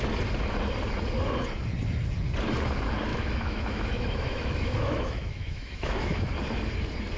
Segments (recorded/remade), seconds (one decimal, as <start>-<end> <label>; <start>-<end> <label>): 0.0-3.1 recorded; 3.1-6.3 remade; 6.3-7.2 recorded